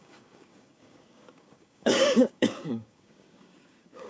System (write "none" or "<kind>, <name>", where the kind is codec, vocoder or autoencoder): codec, DAC